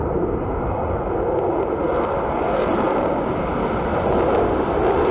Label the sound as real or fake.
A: real